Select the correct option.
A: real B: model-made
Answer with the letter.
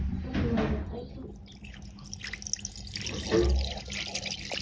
A